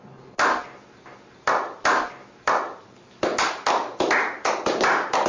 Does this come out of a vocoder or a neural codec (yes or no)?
no